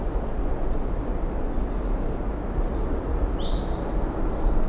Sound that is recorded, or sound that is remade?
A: recorded